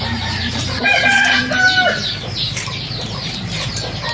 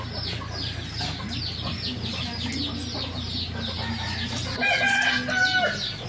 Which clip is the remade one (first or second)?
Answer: first